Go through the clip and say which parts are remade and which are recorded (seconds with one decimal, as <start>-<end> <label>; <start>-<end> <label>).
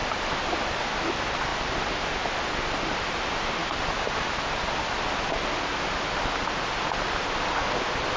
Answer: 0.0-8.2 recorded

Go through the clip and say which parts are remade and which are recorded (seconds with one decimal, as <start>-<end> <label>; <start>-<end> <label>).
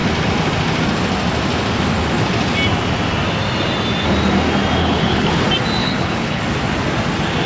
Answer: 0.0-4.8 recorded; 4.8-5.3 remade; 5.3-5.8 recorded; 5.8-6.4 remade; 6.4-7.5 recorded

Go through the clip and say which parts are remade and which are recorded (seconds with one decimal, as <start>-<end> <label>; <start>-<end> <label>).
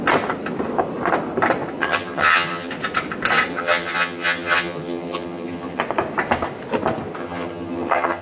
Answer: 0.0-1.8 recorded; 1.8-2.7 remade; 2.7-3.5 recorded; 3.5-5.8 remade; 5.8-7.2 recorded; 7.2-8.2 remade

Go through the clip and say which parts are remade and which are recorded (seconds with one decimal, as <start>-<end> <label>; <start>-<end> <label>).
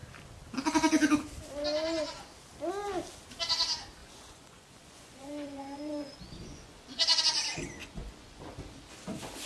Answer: 0.0-4.0 recorded; 4.0-7.2 remade; 7.2-7.8 recorded; 7.8-8.5 remade; 8.5-9.5 recorded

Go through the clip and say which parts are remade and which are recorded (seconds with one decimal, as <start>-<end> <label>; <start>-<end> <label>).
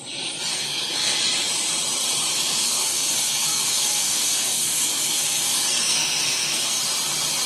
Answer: 0.0-0.5 recorded; 0.5-1.2 remade; 1.2-2.3 recorded; 2.3-6.8 remade; 6.8-7.5 recorded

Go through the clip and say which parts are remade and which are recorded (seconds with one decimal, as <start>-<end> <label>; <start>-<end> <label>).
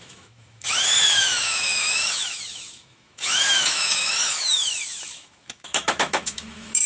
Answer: 0.0-6.9 remade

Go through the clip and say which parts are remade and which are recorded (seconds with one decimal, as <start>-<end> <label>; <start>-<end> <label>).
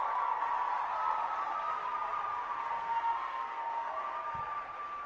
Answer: 0.0-2.6 recorded; 2.6-3.9 remade; 3.9-5.1 recorded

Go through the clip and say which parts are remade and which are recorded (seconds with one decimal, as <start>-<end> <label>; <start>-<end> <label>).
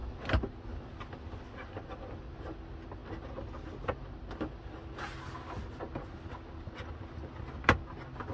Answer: 0.0-8.3 recorded